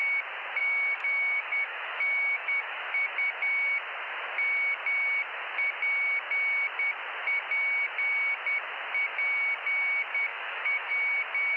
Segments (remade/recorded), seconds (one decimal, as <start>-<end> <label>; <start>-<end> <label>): 0.0-0.6 recorded; 0.6-2.8 remade; 2.8-10.3 recorded; 10.3-10.9 remade; 10.9-11.6 recorded